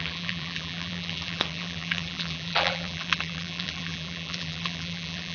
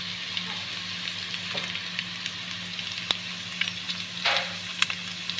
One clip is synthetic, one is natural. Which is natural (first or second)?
second